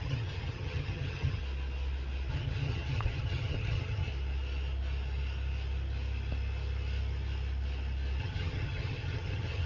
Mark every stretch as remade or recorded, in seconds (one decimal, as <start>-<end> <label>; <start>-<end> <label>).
0.0-1.4 remade; 1.4-2.3 recorded; 2.3-4.1 remade; 4.1-8.2 recorded; 8.2-9.7 remade